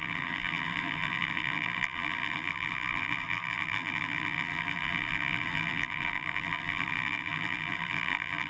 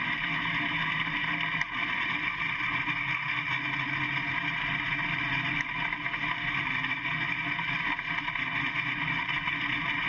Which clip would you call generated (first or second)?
first